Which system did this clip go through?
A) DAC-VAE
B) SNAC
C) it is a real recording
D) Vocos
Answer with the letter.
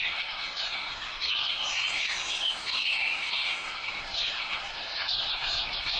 B